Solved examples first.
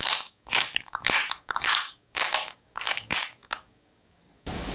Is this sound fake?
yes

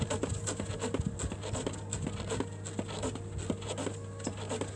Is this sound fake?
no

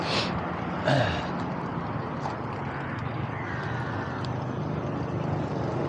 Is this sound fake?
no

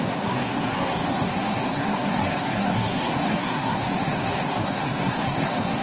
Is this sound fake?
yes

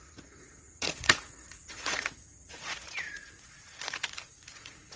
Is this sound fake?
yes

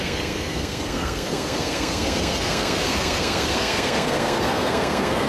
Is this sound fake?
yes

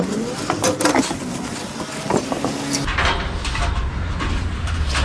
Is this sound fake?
no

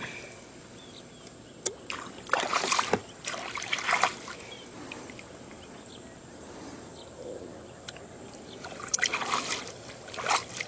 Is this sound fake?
no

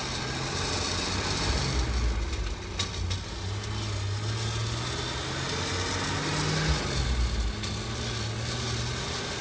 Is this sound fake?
no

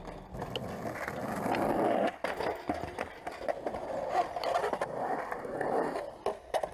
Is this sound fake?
no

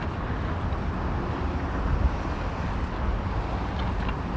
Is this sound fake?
no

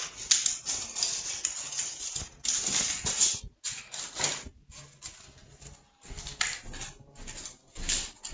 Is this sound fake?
no